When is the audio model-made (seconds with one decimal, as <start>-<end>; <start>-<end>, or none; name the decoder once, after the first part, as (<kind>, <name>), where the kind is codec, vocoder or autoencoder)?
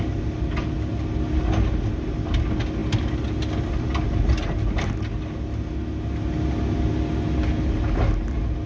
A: none